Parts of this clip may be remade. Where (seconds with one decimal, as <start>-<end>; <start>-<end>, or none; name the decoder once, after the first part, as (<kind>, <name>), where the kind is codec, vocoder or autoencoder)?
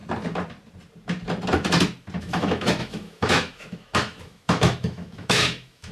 2.2-5.9 (autoencoder, DAC-VAE)